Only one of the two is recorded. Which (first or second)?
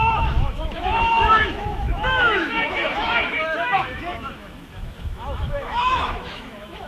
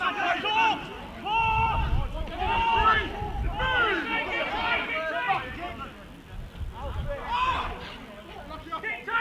second